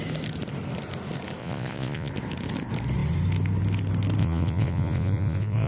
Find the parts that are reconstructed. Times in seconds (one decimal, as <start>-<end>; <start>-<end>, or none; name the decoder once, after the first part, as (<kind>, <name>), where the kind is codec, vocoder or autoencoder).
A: 1.4-2.1 (vocoder, Vocos); 4.2-5.7